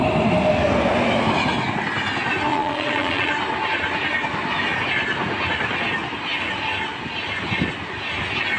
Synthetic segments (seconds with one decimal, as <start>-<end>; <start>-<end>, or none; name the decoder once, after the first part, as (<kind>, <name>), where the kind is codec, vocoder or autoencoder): 2.5-3.3 (vocoder, Vocos)